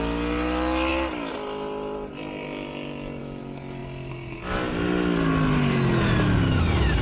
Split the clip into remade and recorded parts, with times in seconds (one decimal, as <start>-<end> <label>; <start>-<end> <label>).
0.0-7.0 recorded